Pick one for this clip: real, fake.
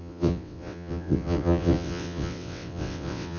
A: fake